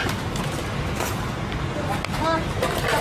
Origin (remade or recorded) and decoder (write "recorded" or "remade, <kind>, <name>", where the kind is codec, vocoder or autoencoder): recorded